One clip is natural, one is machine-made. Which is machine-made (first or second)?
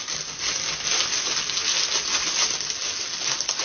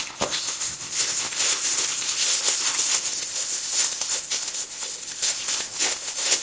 second